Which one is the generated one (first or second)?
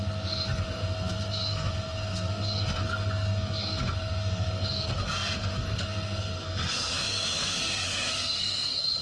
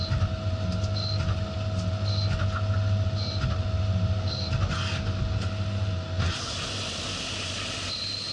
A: first